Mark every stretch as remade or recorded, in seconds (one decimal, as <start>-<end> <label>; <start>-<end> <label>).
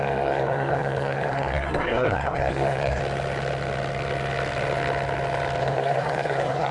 0.0-3.0 remade; 3.0-5.6 recorded; 5.6-6.7 remade